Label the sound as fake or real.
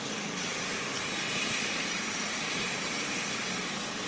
real